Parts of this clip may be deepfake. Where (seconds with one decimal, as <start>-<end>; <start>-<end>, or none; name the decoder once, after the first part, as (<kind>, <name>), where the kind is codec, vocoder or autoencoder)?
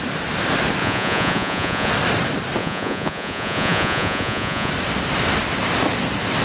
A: 0.8-1.9 (vocoder, Vocos); 2.6-4.7